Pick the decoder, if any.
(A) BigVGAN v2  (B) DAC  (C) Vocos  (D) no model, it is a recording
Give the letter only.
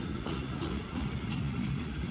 C